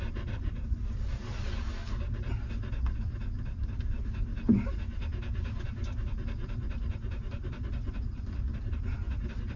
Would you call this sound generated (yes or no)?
no